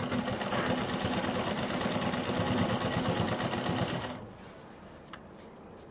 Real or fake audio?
real